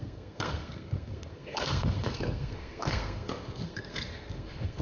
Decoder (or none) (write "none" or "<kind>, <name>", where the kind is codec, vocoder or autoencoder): codec, SNAC